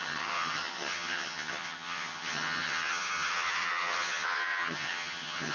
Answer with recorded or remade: remade